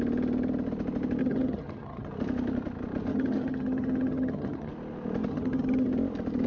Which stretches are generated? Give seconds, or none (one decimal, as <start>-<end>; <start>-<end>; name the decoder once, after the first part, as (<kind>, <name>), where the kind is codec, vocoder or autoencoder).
1.2-2.1 (vocoder, HiFi-GAN); 3.1-4.7; 5.3-5.9